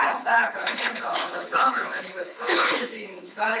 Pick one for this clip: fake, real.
fake